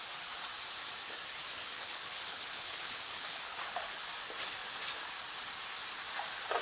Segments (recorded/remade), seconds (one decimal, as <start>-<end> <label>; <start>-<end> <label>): 0.0-1.5 recorded; 1.5-4.1 remade; 4.1-6.6 recorded